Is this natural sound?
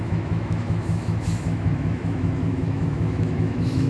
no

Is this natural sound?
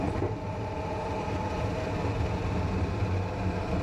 yes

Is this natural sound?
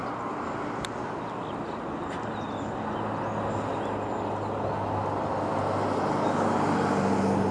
yes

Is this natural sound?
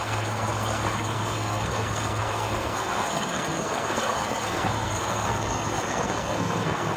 no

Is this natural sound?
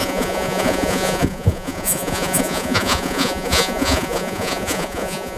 no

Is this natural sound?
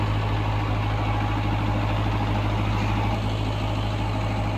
yes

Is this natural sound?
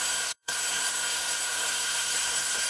no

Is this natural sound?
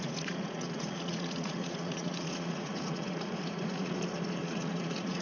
no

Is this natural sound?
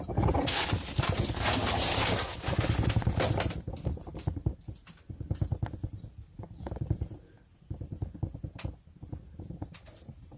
yes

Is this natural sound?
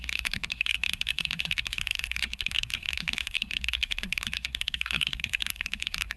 no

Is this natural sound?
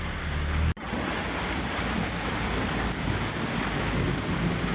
yes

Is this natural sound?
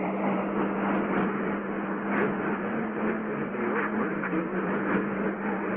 yes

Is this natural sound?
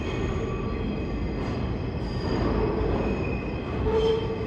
yes